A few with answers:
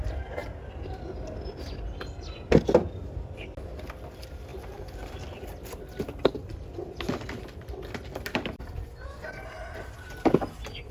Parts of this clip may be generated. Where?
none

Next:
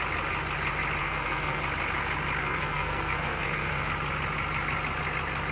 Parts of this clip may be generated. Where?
1.0-1.6 (codec, SNAC); 2.4-3.9

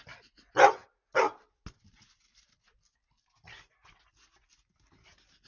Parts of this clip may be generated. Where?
none

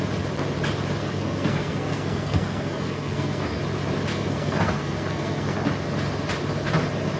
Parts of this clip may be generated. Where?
1.0-3.6 (codec, SNAC); 4.1-5.7

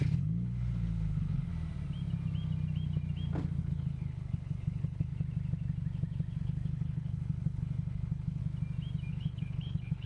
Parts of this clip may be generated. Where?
0.0-1.5 (codec, HILCodec); 3.6-5.1; 6.4-8.4; 9.1-10.1